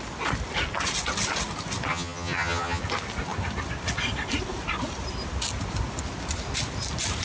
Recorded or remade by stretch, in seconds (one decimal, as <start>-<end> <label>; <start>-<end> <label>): 0.0-1.9 recorded; 1.9-2.8 remade; 2.8-7.2 recorded